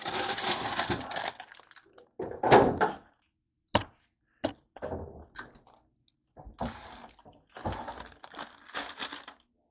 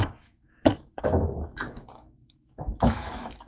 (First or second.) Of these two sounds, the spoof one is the second